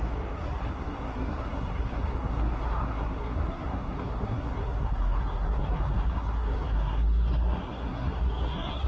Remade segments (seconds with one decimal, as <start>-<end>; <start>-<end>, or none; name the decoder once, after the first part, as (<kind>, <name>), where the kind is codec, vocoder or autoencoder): 0.0-8.9 (codec, SNAC)